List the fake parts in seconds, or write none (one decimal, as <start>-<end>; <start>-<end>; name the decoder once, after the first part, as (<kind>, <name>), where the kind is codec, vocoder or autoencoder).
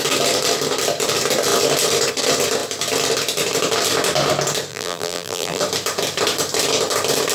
4.7-5.6 (vocoder, BigVGAN v2)